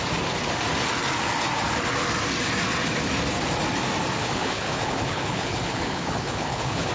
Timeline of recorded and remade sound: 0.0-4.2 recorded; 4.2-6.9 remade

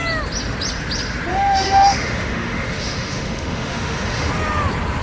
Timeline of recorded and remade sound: 0.0-1.3 recorded; 1.3-4.3 remade; 4.3-5.0 recorded

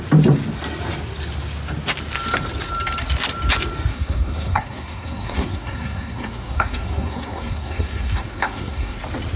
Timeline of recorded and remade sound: 0.0-3.9 recorded; 3.9-9.0 remade; 9.0-9.4 recorded

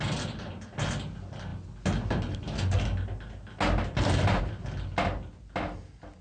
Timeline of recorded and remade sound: 0.0-6.2 recorded

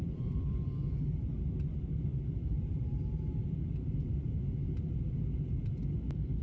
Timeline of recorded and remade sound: 0.0-0.6 remade; 0.6-2.1 recorded; 2.1-4.0 remade; 4.0-5.8 recorded; 5.8-6.4 remade

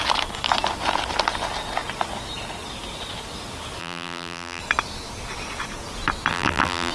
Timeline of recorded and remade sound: 0.0-3.8 recorded; 3.8-4.6 remade; 4.6-6.3 recorded; 6.3-6.9 remade